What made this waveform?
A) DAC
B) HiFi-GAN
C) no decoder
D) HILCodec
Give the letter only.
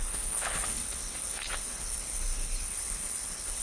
D